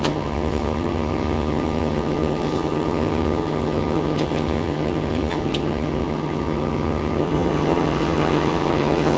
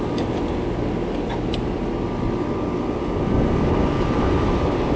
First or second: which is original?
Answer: second